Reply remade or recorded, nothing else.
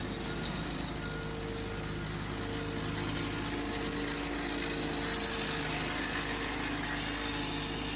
recorded